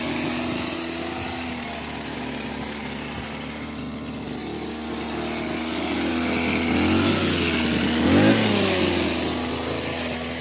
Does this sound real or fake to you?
real